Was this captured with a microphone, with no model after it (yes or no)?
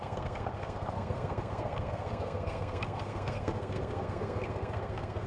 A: no